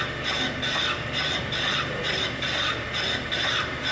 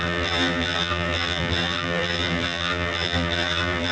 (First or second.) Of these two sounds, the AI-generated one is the second